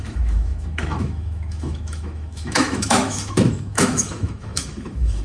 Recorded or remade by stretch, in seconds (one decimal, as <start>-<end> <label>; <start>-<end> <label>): 0.0-5.2 remade